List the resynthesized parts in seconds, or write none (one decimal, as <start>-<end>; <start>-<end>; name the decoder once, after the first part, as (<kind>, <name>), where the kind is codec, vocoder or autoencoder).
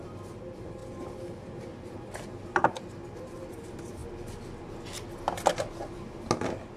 none